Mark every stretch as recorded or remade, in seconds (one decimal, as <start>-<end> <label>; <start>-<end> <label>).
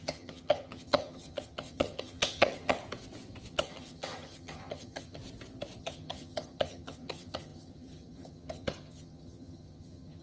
0.0-2.8 remade; 2.8-3.5 recorded; 3.5-5.2 remade; 5.2-5.8 recorded; 5.8-10.2 remade